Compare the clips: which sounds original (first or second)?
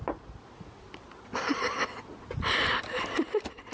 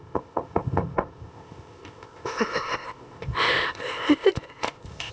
first